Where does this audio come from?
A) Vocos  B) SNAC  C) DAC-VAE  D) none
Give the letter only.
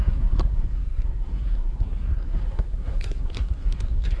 B